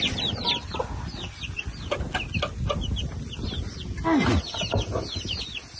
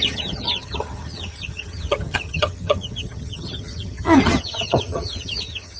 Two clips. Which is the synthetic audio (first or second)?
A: second